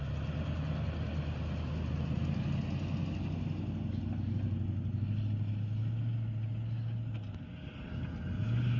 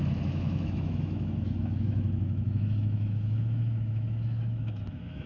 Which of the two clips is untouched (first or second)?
first